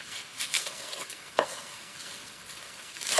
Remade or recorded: remade